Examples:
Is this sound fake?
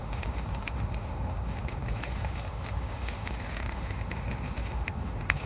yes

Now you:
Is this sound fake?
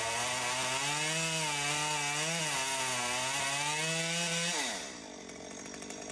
no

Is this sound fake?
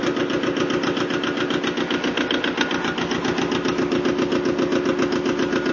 no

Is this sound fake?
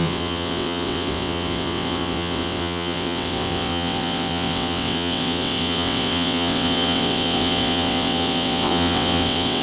yes